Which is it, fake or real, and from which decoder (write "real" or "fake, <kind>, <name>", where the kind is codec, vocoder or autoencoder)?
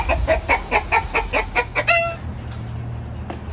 real